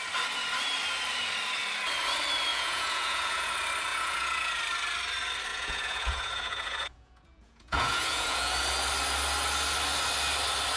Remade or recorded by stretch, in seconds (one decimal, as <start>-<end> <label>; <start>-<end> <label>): 0.0-2.5 recorded; 2.5-3.5 remade; 3.5-3.9 recorded; 3.9-4.6 remade; 4.6-5.5 recorded; 5.5-8.5 remade; 8.5-10.8 recorded